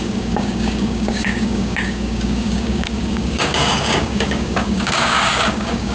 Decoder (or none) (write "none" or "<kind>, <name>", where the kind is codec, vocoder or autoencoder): codec, DAC